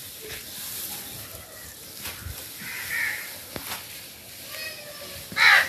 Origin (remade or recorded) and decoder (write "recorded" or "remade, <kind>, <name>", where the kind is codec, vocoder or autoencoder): recorded